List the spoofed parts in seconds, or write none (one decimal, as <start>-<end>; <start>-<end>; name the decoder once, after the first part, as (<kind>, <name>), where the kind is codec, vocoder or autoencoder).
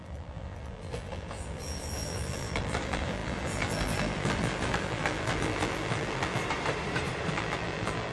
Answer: 0.0-6.4 (vocoder, BigVGAN v2); 7.3-8.1